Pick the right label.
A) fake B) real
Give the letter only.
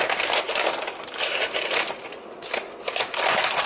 B